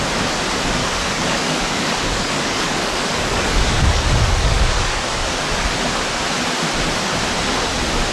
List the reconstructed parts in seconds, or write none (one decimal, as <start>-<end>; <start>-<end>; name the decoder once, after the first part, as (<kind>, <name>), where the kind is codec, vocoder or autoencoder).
0.8-5.7 (codec, DAC)